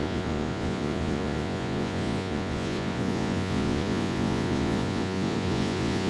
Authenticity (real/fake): fake